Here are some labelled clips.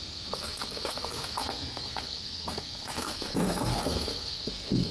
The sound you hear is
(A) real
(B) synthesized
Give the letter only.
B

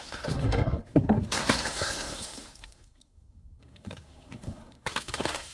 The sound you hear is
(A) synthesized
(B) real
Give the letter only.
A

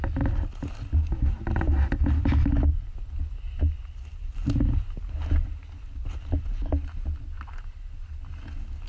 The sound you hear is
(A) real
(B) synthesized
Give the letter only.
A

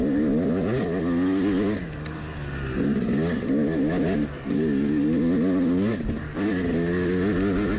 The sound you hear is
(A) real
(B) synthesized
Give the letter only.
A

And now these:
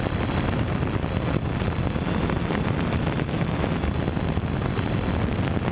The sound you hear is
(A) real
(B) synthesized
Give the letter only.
A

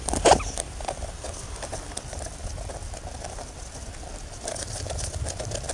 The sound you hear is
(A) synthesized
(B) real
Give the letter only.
B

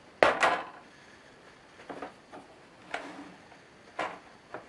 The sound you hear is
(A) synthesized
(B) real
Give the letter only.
B